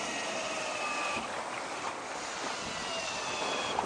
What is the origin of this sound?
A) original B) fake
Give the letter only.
A